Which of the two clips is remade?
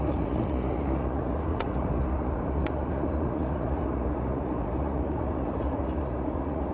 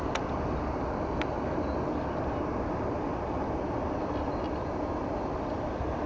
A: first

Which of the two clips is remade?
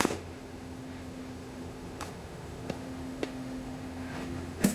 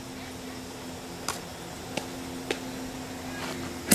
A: first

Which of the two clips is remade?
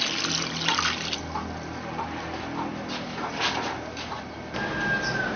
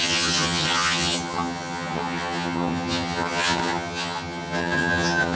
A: second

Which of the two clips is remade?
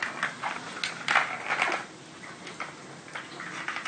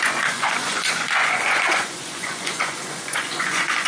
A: second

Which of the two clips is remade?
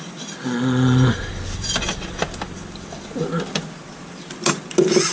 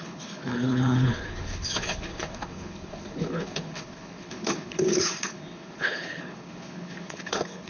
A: second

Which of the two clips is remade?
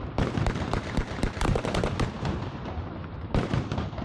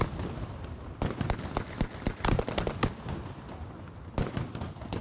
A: first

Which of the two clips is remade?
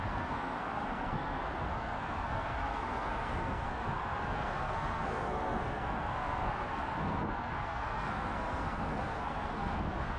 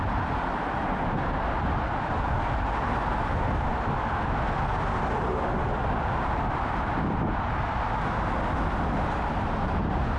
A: first